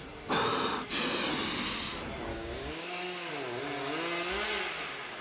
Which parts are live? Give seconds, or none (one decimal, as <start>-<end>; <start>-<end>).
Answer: 0.0-2.3; 3.3-5.2